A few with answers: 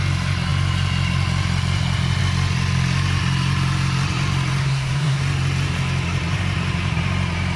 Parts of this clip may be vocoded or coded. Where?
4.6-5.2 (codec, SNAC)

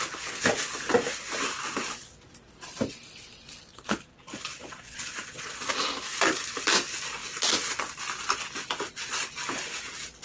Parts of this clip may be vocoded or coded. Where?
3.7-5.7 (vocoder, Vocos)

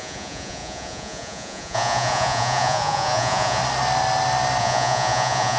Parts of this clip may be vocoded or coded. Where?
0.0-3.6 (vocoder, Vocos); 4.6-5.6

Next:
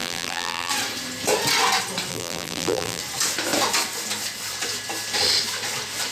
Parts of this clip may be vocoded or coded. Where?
0.0-0.7 (vocoder, BigVGAN v2); 2.1-3.0

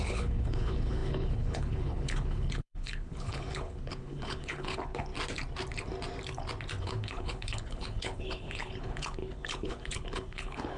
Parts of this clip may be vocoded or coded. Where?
0.0-5.1 (codec, HILCodec); 6.8-10.8

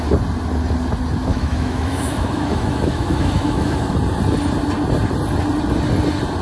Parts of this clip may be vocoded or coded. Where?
1.3-3.9 (autoencoder, DAC-VAE)

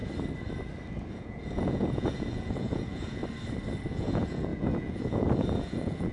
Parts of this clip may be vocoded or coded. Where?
1.1-3.2 (vocoder, Vocos); 3.9-6.1